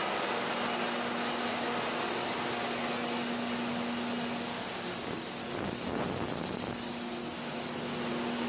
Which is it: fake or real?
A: real